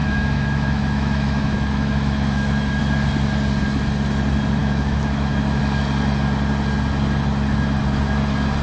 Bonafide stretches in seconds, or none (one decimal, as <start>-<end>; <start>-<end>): 2.8-4.6; 5.6-8.6